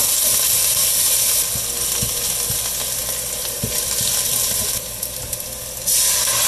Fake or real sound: real